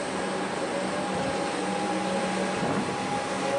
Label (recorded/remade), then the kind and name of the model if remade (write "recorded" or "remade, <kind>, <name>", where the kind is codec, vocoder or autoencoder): recorded